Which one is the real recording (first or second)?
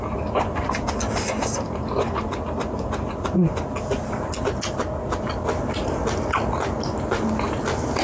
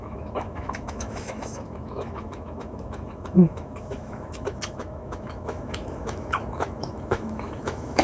first